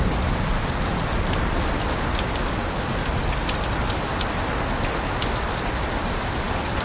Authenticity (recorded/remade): recorded